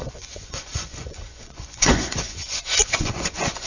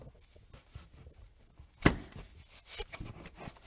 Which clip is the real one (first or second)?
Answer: second